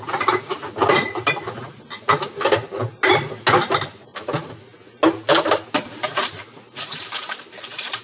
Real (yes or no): yes